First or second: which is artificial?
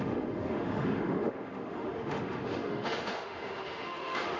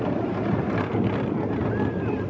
first